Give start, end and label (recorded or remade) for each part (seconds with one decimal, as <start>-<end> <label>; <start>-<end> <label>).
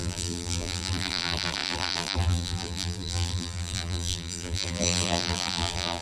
0.0-6.0 remade